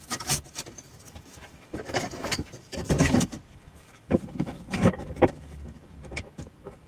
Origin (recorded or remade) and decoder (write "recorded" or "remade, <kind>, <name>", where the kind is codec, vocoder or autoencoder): remade, codec, DAC